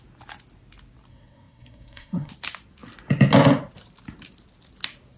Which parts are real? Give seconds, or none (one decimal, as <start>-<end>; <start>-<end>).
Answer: 0.0-1.1; 2.3-5.2